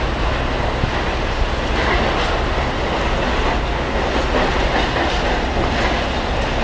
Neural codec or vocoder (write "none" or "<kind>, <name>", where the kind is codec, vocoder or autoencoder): none